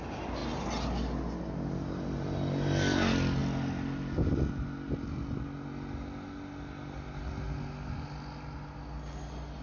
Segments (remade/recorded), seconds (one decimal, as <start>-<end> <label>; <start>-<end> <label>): 0.0-9.6 recorded